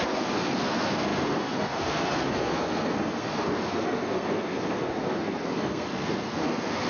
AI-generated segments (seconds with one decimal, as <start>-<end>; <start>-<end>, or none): 0.0-6.9